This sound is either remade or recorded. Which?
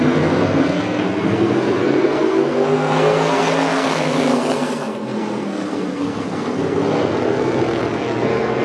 remade